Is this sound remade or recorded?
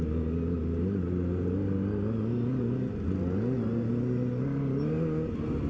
recorded